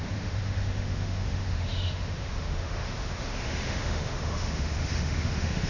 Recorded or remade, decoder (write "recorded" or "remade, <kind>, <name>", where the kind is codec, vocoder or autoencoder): remade, autoencoder, DAC-VAE